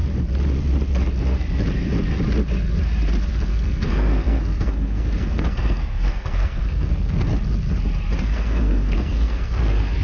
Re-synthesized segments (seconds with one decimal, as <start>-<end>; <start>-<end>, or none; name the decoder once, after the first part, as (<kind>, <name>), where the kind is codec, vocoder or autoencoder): 3.3-7.3 (codec, SNAC); 8.2-10.0